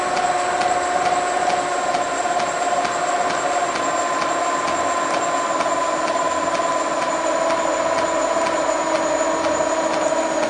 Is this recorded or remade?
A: recorded